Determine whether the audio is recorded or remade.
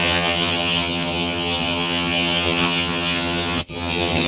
remade